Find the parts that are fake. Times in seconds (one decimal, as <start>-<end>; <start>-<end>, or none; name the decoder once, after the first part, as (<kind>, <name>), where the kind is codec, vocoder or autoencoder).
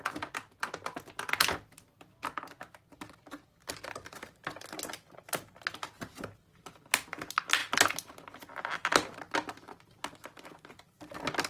none